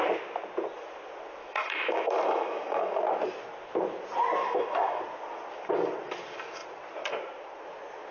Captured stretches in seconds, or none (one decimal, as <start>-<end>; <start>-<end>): 0.0-1.4; 3.0-4.4; 5.0-8.1